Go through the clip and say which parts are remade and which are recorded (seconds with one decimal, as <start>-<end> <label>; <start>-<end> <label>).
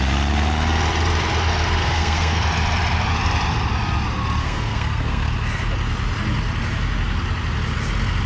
0.0-1.8 recorded; 1.8-2.4 remade; 2.4-4.4 recorded; 4.4-5.3 remade; 5.3-8.3 recorded